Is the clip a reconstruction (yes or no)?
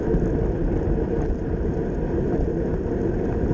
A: no